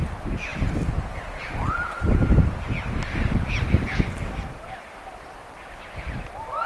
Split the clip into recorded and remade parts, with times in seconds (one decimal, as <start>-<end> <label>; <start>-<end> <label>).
0.0-6.7 recorded